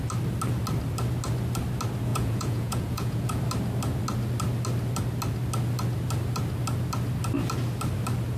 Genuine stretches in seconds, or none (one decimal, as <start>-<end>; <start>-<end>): 0.0-2.1; 3.4-8.4